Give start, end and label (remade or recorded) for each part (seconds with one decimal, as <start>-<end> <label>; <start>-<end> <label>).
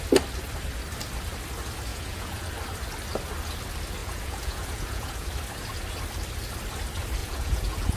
0.0-1.9 recorded; 1.9-2.5 remade; 2.5-4.0 recorded; 4.0-5.3 remade; 5.3-7.2 recorded; 7.2-8.0 remade